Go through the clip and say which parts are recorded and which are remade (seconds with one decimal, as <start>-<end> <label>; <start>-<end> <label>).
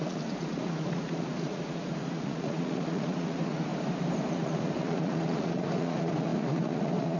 0.0-3.7 remade; 3.7-4.3 recorded; 4.3-7.2 remade